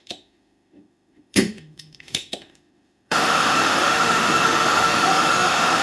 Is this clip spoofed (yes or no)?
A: yes